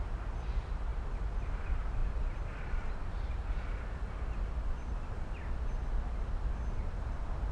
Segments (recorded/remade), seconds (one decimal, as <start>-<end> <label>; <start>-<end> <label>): 0.0-0.9 recorded; 0.9-1.5 remade; 1.5-7.5 recorded